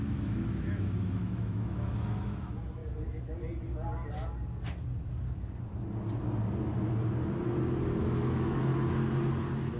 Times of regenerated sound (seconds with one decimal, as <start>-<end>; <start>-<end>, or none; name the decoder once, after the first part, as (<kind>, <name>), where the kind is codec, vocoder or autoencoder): 0.0-2.8 (autoencoder, DAC-VAE); 8.0-8.7